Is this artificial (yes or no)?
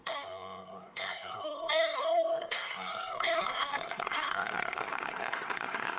yes